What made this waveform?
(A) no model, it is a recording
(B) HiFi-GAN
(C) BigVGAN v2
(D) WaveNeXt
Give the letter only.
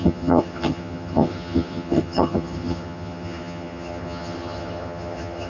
B